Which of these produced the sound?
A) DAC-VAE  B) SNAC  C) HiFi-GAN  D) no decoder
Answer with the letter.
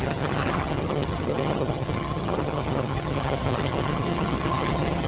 C